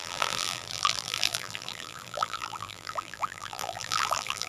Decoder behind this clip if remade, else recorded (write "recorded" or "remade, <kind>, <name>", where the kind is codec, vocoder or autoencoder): remade, vocoder, BigVGAN v2